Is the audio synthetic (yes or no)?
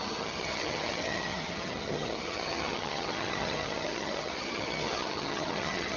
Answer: yes